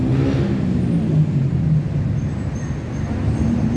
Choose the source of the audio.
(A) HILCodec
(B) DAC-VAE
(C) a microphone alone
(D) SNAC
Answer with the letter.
C